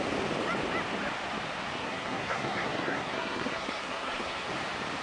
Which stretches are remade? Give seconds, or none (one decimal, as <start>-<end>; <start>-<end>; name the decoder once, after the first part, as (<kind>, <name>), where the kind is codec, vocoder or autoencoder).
1.8-4.5 (codec, SNAC)